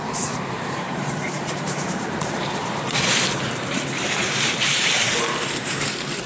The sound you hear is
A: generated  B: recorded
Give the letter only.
A